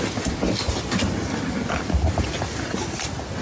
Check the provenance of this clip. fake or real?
real